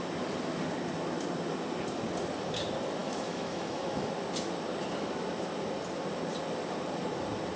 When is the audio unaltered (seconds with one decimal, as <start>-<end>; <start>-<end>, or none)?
0.0-3.0; 4.1-7.6